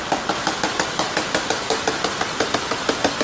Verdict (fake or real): fake